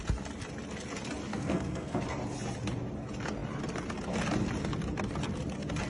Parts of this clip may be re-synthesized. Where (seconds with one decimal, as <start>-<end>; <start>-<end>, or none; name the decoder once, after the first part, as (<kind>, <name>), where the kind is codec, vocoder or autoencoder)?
1.3-2.0 (codec, SNAC)